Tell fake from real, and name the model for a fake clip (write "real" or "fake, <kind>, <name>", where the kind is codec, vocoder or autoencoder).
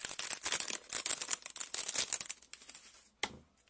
real